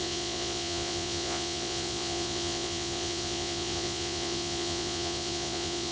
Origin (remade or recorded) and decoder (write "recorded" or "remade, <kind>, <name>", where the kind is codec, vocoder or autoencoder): remade, vocoder, Vocos